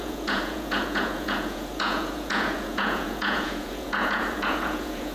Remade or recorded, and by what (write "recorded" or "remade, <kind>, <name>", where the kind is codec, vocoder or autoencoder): remade, vocoder, Vocos